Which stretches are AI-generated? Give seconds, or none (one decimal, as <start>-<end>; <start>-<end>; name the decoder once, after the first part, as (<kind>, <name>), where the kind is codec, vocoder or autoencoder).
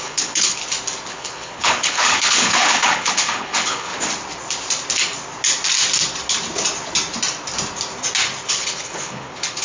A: 0.0-0.6 (codec, HILCodec); 1.1-3.9; 8.5-9.6